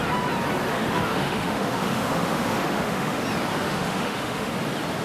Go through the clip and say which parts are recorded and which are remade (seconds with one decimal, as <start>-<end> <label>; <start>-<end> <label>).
0.0-0.7 recorded; 0.7-3.2 remade; 3.2-3.6 recorded; 3.6-4.5 remade; 4.5-5.0 recorded